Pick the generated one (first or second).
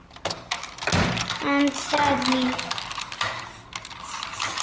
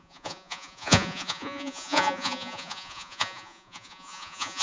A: second